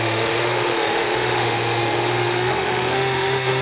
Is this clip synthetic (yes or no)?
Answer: yes